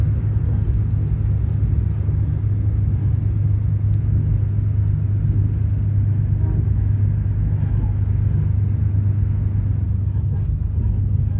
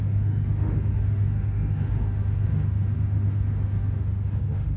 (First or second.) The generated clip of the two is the second